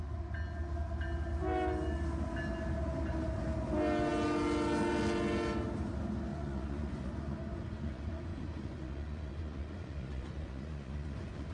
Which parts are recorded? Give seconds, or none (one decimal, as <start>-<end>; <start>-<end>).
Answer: 0.0-6.3